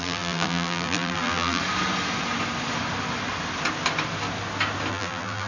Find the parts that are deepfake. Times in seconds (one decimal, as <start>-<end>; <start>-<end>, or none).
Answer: 0.0-1.6; 4.9-5.5